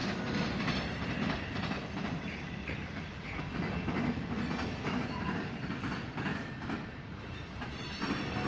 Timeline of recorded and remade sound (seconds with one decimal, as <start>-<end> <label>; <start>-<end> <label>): 0.0-3.4 remade; 3.4-6.3 recorded; 6.3-7.6 remade; 7.6-8.5 recorded

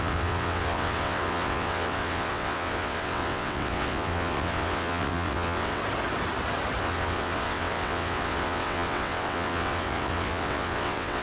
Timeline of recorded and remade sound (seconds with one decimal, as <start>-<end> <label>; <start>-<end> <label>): 0.0-5.8 remade; 5.8-6.8 recorded; 6.8-11.2 remade

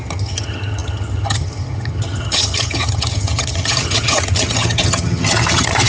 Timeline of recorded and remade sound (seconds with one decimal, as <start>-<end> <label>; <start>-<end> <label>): 0.0-5.9 remade

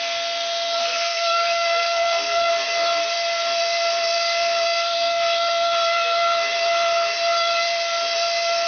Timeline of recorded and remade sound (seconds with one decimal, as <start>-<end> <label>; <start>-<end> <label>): 0.0-0.8 recorded; 0.8-2.5 remade; 2.5-8.7 recorded

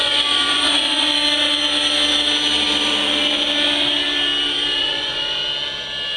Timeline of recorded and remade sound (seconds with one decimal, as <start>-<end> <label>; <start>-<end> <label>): 0.0-1.1 remade; 1.1-4.8 recorded; 4.8-5.4 remade; 5.4-6.2 recorded

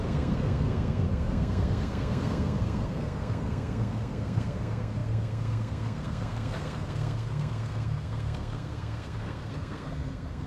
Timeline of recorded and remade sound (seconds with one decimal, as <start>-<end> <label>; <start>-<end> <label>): 0.0-10.5 remade

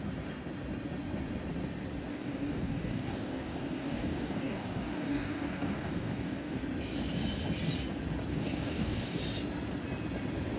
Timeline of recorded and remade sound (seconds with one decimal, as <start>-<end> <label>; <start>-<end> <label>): 0.0-2.1 recorded; 2.1-6.6 remade; 6.6-8.3 recorded; 8.3-9.2 remade; 9.2-10.6 recorded